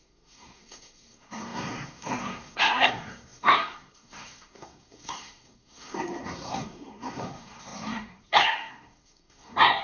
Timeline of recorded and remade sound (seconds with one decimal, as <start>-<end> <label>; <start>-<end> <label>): 0.0-9.8 remade

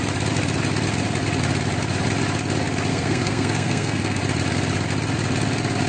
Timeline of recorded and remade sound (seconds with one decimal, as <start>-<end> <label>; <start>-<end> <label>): 0.0-2.9 recorded; 2.9-4.2 remade; 4.2-5.9 recorded

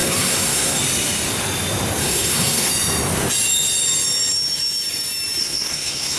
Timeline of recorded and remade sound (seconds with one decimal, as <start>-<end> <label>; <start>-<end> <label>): 0.0-0.8 remade; 0.8-2.0 recorded; 2.0-2.7 remade; 2.7-5.4 recorded; 5.4-6.2 remade